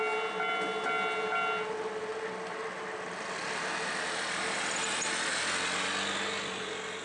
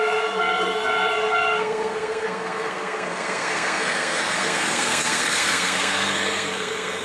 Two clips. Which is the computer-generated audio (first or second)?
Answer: second